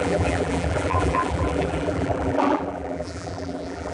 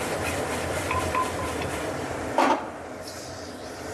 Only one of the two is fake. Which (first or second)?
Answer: first